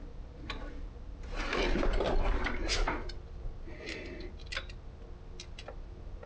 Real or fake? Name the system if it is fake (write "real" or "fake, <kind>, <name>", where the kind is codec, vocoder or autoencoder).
real